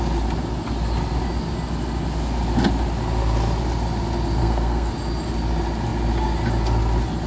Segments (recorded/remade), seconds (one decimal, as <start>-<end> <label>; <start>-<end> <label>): 0.0-4.4 recorded; 4.4-4.9 remade; 4.9-7.3 recorded